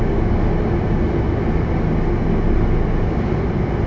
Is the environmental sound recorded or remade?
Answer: recorded